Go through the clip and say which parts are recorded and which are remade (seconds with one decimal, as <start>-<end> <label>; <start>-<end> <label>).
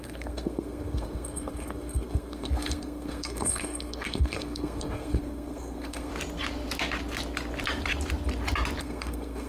0.0-6.1 remade; 6.1-8.8 recorded; 8.8-9.5 remade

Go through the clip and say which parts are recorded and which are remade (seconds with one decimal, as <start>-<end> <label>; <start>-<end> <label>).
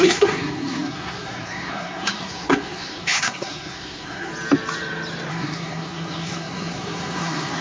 0.0-4.3 remade; 4.3-5.3 recorded; 5.3-7.6 remade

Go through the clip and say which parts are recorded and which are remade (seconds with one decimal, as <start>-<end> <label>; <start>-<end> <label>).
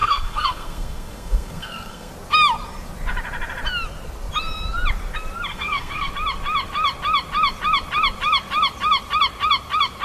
0.0-2.1 remade; 2.1-5.5 recorded; 5.5-6.1 remade; 6.1-10.0 recorded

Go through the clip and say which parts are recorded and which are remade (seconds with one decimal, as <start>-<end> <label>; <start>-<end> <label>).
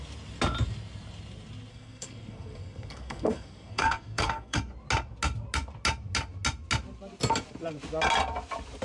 0.0-1.7 recorded; 1.7-4.6 remade; 4.6-8.8 recorded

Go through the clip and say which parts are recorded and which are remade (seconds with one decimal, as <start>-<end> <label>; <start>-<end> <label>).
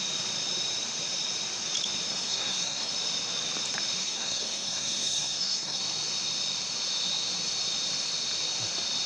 0.0-2.1 recorded; 2.1-2.9 remade; 2.9-4.0 recorded; 4.0-5.8 remade; 5.8-9.1 recorded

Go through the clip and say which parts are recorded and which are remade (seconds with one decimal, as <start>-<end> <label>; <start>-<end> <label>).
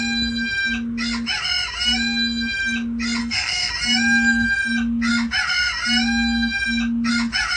0.0-3.2 recorded; 3.2-3.7 remade; 3.7-7.6 recorded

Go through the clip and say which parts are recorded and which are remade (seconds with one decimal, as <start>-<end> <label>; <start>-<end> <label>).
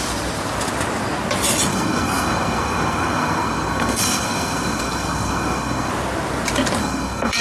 0.0-1.7 recorded; 1.7-5.9 remade; 5.9-6.8 recorded; 6.8-7.4 remade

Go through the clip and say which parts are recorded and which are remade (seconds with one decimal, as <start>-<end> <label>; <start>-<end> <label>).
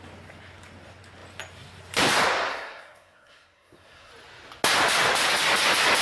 0.0-2.5 recorded; 2.5-4.1 remade; 4.1-6.0 recorded